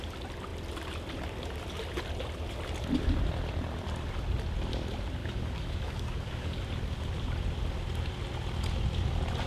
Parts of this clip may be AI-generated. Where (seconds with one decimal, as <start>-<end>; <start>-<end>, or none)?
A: 5.2-6.6

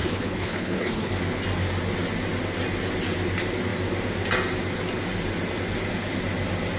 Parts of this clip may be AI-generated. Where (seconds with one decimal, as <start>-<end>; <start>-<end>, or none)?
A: 0.0-1.1

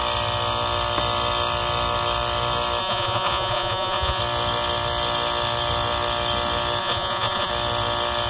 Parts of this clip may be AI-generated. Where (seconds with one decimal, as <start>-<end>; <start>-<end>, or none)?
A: 2.8-4.2; 6.8-7.5

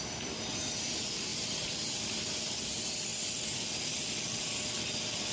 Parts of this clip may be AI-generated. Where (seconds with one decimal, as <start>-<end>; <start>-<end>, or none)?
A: none

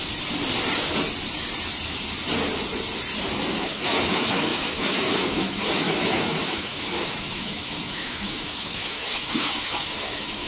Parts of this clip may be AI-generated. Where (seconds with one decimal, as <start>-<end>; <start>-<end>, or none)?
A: 3.6-10.5